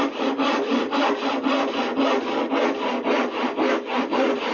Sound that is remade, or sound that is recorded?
recorded